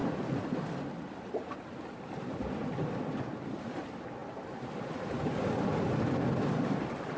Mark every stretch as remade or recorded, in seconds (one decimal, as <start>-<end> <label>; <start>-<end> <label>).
0.0-1.9 recorded; 1.9-2.6 remade; 2.6-3.3 recorded; 3.3-7.2 remade